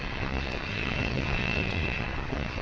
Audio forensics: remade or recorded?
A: remade